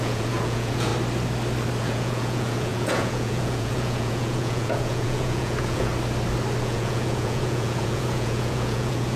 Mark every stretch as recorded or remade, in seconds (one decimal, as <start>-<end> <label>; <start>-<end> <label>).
0.0-0.9 remade; 0.9-1.8 recorded; 1.8-5.9 remade; 5.9-6.6 recorded; 6.6-9.2 remade